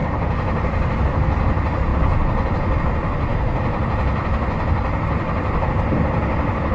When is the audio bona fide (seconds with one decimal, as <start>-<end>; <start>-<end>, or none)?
1.0-6.7